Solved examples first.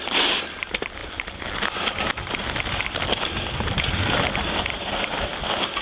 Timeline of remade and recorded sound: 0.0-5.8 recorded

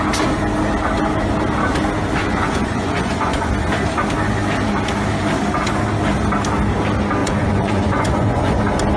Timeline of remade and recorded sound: 0.0-2.2 recorded; 2.2-3.5 remade; 3.5-7.2 recorded; 7.2-8.6 remade; 8.6-9.0 recorded

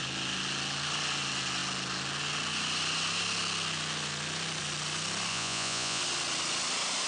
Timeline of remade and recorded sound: 0.0-5.3 recorded; 5.3-6.0 remade; 6.0-7.1 recorded

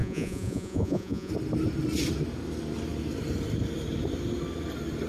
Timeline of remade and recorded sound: 0.0-1.3 remade; 1.3-5.1 recorded